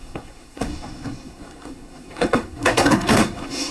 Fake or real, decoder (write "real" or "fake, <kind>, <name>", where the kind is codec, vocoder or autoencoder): fake, codec, SNAC